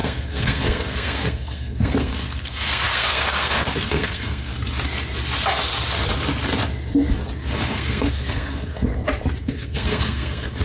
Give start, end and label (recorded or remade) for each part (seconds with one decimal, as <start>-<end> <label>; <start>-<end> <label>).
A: 0.0-4.5 remade; 4.5-7.4 recorded; 7.4-8.9 remade; 8.9-9.4 recorded; 9.4-10.6 remade